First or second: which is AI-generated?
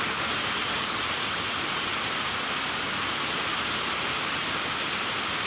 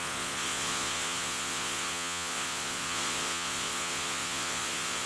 second